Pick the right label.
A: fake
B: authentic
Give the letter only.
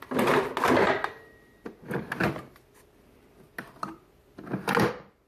B